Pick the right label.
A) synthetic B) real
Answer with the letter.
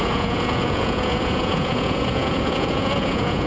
A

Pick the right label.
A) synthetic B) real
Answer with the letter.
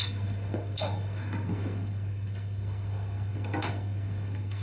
A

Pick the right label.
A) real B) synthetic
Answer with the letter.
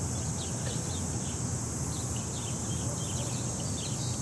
A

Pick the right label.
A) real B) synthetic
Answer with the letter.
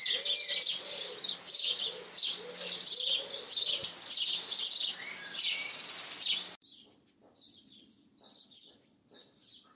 A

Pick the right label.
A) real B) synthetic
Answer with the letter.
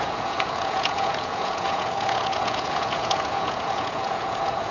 B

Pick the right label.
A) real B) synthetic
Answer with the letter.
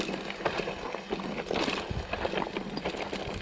A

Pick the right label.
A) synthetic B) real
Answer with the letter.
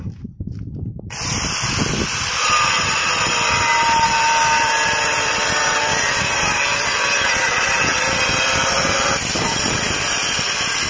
B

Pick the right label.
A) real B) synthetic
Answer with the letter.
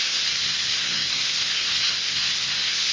B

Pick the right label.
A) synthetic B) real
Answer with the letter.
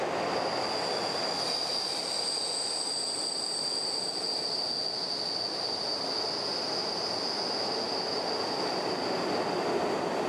B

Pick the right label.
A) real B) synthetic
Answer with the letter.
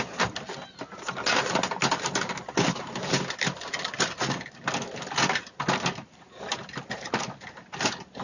A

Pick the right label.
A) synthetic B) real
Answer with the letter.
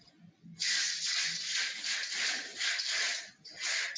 B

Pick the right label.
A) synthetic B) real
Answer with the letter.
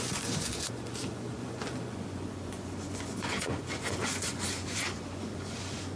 A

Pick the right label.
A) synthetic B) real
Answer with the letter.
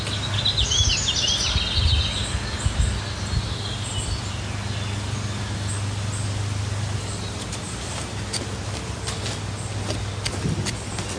B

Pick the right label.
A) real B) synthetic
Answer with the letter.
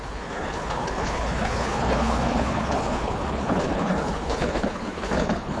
B